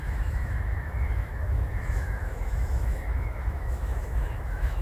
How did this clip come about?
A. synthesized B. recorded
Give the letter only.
A